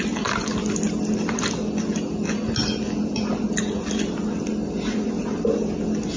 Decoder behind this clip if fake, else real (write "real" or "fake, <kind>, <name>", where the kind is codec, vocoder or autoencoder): real